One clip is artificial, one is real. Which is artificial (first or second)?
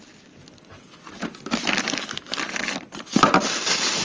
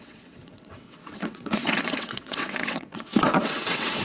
second